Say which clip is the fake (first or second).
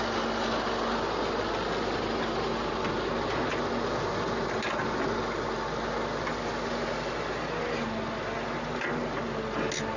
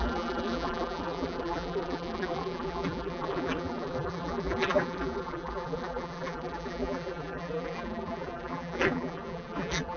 second